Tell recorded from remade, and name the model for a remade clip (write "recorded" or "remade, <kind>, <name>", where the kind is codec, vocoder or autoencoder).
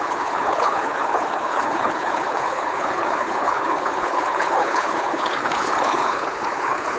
remade, codec, HILCodec